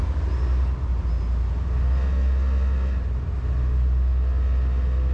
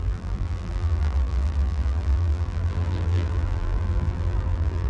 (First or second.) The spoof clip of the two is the second